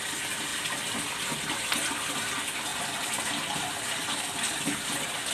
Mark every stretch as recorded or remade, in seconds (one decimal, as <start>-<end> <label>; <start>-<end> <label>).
0.0-5.3 recorded